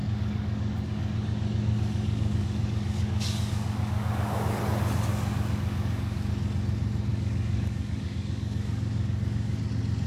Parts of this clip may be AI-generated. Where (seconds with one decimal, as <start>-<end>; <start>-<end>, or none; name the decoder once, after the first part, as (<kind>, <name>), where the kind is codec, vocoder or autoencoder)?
0.0-4.6 (codec, DAC); 5.1-6.3; 7.1-9.6